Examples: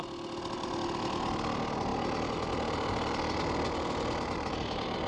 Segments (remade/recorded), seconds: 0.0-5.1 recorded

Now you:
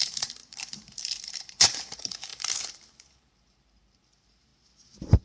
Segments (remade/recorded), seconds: 0.0-4.5 remade; 4.5-5.2 recorded